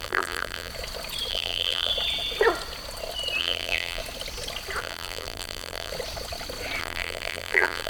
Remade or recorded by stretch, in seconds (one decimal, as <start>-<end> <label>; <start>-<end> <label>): 0.0-0.7 remade; 0.7-1.3 recorded; 1.3-1.9 remade; 1.9-3.4 recorded; 3.4-4.0 remade; 4.0-4.8 recorded; 4.8-5.9 remade; 5.9-6.8 recorded; 6.8-7.9 remade